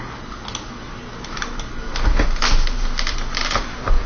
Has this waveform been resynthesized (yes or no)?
no